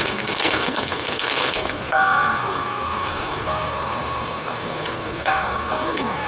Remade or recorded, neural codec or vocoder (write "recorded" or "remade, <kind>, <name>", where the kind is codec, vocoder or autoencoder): remade, codec, SNAC